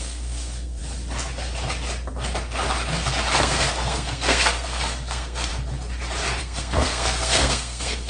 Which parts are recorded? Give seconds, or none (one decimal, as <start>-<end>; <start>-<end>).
0.8-3.4; 5.5-6.4